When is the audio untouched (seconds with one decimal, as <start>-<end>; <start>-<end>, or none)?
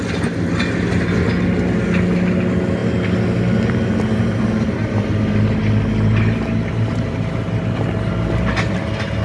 0.0-9.2